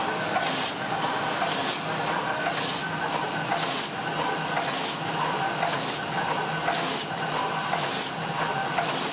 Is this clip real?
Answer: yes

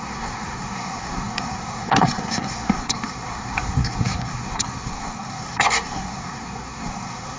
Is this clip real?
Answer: no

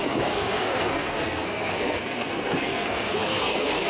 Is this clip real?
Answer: no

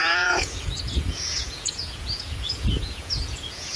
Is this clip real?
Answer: no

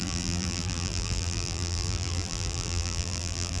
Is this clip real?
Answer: no